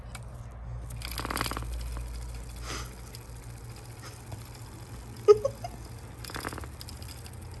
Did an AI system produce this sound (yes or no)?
no